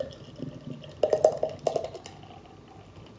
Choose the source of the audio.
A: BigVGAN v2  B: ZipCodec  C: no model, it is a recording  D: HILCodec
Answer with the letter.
C